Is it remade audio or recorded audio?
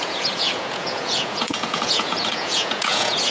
remade